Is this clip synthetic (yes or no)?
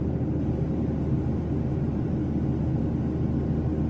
no